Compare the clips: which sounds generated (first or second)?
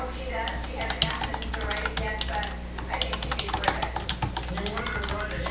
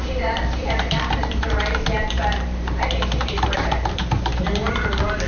second